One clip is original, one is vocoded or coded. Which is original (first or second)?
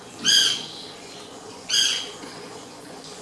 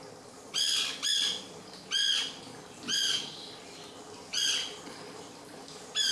second